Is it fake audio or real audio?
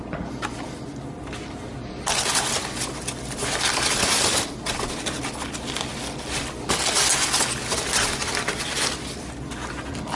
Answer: real